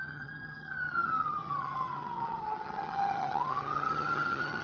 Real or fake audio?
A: fake